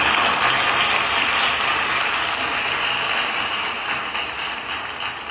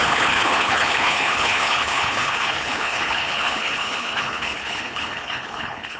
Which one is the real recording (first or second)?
first